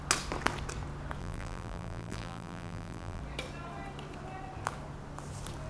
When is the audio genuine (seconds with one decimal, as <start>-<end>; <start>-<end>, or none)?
0.0-1.2; 3.2-5.7